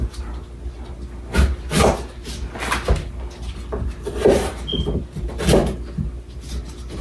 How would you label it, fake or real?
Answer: real